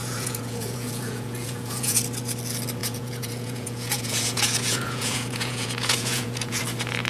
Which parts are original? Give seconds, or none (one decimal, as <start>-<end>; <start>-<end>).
2.0-2.8; 6.6-7.1